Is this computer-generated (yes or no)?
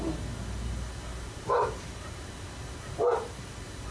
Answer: no